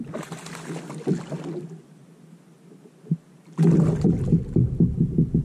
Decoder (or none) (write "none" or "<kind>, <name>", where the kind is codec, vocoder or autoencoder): none